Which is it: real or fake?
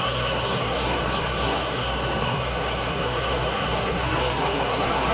fake